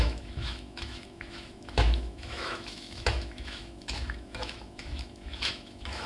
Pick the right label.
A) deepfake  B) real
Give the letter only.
A